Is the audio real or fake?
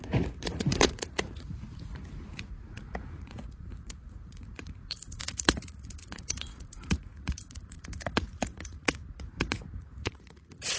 fake